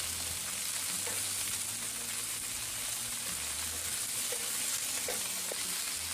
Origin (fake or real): real